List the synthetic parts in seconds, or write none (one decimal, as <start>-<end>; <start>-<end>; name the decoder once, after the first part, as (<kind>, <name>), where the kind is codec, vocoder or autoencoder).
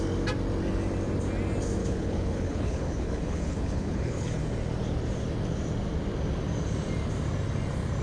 1.8-4.4 (codec, HILCodec)